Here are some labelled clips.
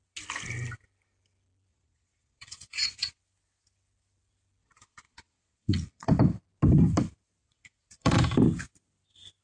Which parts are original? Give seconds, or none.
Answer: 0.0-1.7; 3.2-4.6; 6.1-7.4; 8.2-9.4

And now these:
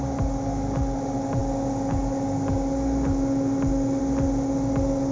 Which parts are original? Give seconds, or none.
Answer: 0.0-5.1

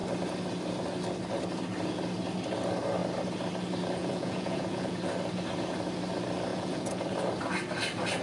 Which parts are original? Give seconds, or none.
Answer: 0.0-4.0; 5.0-6.5; 7.0-8.2

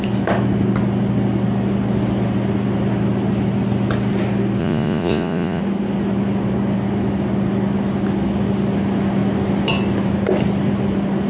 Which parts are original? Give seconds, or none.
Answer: 0.0-4.6; 5.6-11.3

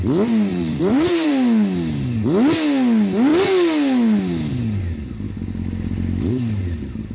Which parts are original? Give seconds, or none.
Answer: 0.0-0.5; 1.3-7.1

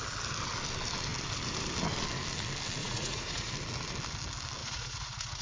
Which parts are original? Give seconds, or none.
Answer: 0.0-2.8; 3.5-4.6